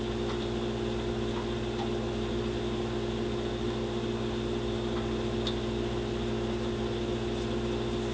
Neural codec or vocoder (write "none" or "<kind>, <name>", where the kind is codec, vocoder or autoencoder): none